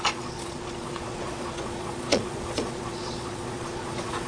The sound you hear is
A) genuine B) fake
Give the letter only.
B